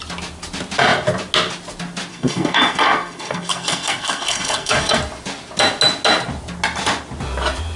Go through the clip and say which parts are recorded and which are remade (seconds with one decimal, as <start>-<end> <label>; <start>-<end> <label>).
0.0-2.1 recorded; 2.1-5.0 remade; 5.0-7.8 recorded